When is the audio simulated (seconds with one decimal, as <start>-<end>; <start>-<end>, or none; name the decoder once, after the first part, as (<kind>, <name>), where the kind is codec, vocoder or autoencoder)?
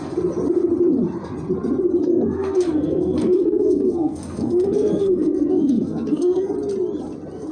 2.0-6.5 (codec, SNAC)